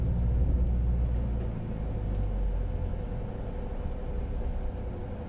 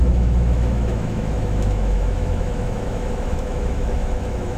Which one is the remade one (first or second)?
second